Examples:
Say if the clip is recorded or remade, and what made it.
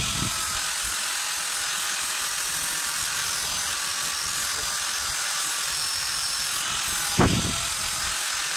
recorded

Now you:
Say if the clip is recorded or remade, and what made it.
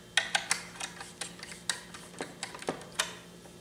recorded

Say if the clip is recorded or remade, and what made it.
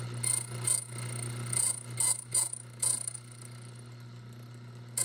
recorded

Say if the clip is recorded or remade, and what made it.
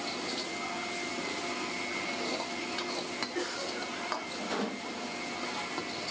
recorded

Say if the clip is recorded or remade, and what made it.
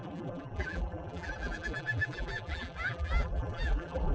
remade, vocoder, BigVGAN v2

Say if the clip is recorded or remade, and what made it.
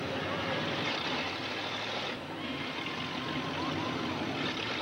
remade, vocoder, BigVGAN v2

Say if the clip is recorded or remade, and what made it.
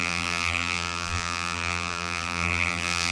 remade, vocoder, BigVGAN v2